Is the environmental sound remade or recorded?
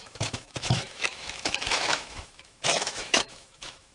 remade